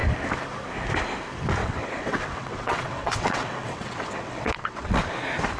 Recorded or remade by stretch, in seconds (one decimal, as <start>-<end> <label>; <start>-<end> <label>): 0.0-1.6 recorded; 1.6-5.0 remade; 5.0-5.6 recorded

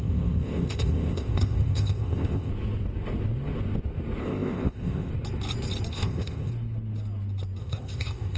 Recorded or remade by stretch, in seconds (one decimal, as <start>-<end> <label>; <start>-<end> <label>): 0.0-2.5 remade; 2.5-4.2 recorded; 4.2-5.1 remade; 5.1-5.9 recorded; 5.9-6.5 remade; 6.5-7.6 recorded; 7.6-8.4 remade